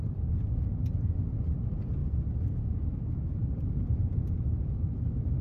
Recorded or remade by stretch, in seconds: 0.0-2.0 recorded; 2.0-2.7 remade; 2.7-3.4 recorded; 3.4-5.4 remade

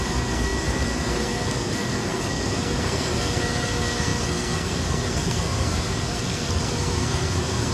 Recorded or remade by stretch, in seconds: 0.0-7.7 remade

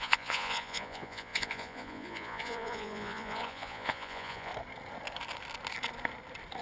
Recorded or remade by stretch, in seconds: 0.0-4.5 remade; 4.5-6.6 recorded